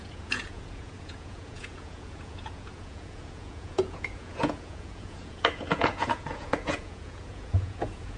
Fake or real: fake